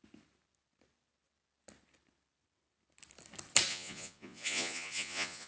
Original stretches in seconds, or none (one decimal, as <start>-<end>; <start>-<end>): 0.0-3.7